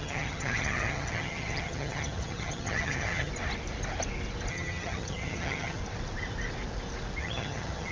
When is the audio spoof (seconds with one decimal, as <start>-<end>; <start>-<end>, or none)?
0.0-3.3; 4.5-5.8; 7.2-7.9